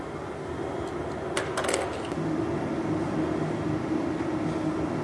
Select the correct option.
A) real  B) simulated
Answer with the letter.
A